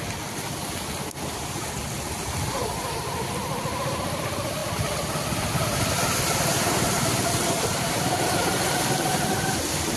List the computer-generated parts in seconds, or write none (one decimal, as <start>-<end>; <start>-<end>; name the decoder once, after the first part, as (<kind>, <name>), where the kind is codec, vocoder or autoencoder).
none